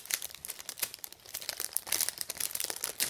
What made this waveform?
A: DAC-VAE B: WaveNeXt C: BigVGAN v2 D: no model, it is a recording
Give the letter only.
C